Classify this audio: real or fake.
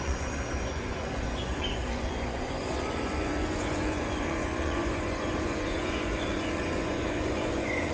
fake